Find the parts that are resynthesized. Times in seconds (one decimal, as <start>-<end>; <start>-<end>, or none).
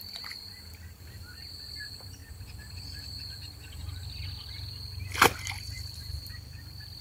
0.0-2.2; 2.8-4.0; 5.7-7.0